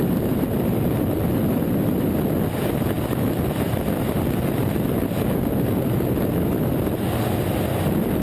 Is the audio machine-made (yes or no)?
no